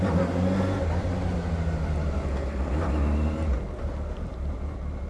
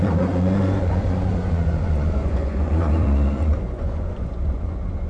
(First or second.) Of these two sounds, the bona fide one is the first